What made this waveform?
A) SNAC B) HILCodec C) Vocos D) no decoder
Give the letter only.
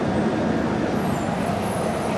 D